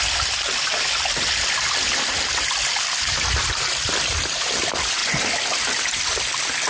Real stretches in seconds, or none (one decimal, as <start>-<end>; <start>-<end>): 0.0-6.7